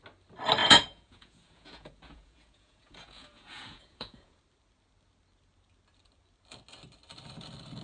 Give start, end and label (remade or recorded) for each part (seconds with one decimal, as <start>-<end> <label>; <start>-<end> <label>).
0.0-0.6 recorded; 0.6-4.4 remade; 4.4-7.8 recorded